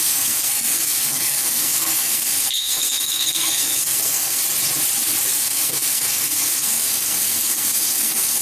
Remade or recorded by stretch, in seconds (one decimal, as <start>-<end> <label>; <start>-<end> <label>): 0.0-4.4 remade; 4.4-5.3 recorded; 5.3-8.4 remade